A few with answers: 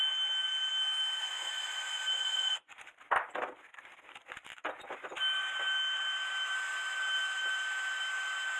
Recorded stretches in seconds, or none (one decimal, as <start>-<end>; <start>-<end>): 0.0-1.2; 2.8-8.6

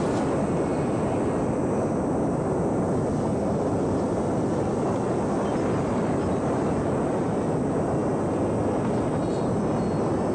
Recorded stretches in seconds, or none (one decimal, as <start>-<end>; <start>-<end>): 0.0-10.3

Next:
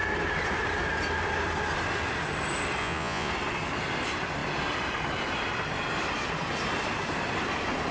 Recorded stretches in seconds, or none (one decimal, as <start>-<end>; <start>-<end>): 0.0-2.8; 3.3-7.9

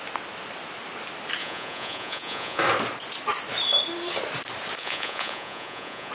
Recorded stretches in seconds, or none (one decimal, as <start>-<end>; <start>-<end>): 0.0-1.4; 2.6-4.8

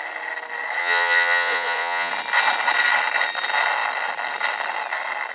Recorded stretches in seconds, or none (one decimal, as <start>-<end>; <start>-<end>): 0.0-0.8; 2.1-5.3